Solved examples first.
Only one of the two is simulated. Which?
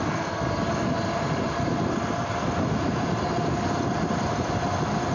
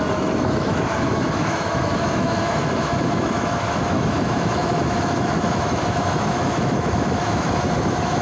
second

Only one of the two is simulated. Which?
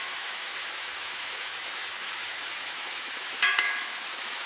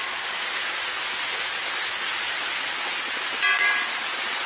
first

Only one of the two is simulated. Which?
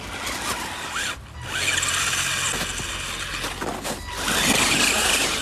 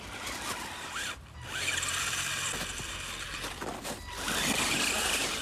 second